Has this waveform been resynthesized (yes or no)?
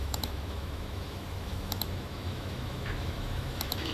yes